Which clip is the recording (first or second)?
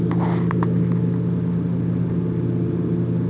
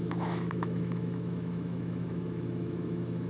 first